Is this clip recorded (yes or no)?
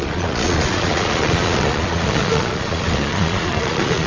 no